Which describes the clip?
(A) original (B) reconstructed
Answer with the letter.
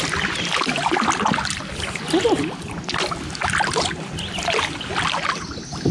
A